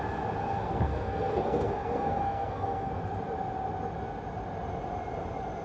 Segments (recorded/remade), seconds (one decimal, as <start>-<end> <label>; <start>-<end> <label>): 0.0-0.4 recorded; 0.4-2.9 remade; 2.9-5.6 recorded